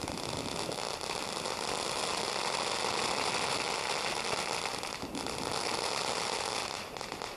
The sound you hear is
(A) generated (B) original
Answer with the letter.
B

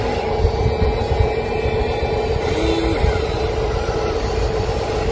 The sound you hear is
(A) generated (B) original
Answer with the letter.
B